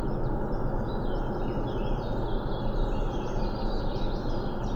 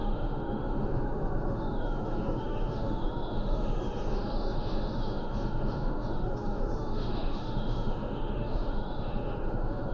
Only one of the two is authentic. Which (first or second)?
first